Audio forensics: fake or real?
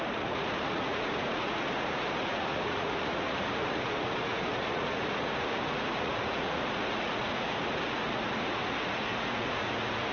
fake